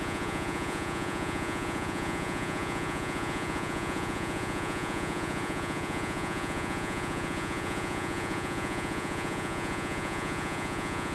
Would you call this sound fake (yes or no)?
yes